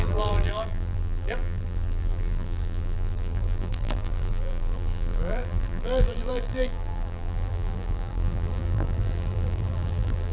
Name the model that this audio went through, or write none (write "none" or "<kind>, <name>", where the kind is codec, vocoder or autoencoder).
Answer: vocoder, BigVGAN v2